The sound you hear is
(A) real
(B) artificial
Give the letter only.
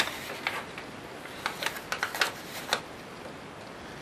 A